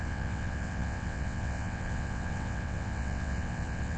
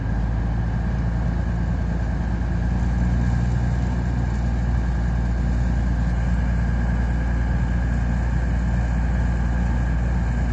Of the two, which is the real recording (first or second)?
second